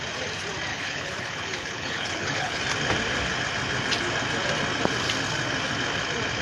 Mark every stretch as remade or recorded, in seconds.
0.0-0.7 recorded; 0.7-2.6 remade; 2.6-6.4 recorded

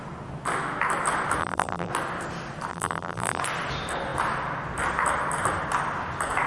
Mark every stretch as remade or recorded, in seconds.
0.0-1.4 recorded; 1.4-1.9 remade; 1.9-2.7 recorded; 2.7-3.4 remade; 3.4-6.5 recorded

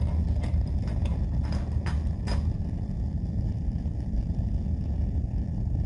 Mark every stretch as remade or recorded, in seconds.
0.0-5.9 recorded

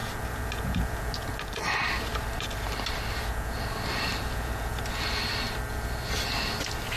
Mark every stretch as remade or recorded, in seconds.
0.0-7.0 recorded

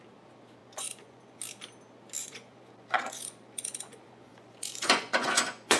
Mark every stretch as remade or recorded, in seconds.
0.0-0.6 recorded; 0.6-1.4 remade; 1.4-2.2 recorded; 2.2-5.8 remade

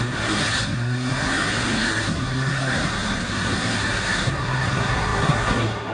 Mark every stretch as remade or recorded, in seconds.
0.0-5.9 remade

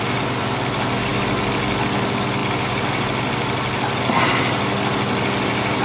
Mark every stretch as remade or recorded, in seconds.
0.0-5.8 recorded